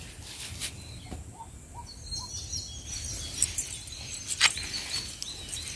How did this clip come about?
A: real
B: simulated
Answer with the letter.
A